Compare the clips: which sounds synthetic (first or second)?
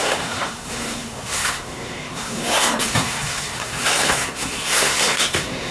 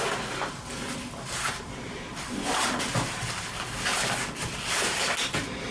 first